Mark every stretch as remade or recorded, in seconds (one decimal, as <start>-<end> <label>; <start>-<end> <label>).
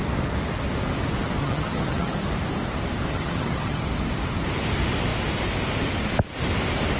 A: 0.0-1.4 recorded; 1.4-2.1 remade; 2.1-3.1 recorded; 3.1-3.8 remade; 3.8-7.0 recorded